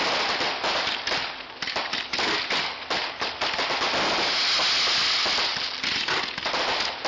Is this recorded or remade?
recorded